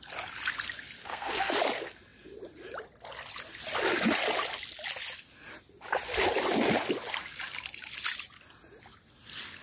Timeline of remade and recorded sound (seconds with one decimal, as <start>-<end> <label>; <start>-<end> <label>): 0.0-1.0 recorded; 1.0-1.5 remade; 1.5-9.6 recorded